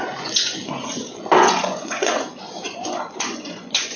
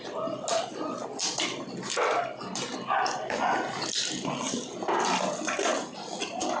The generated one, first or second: first